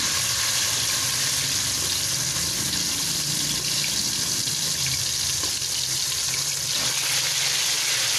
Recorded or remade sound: recorded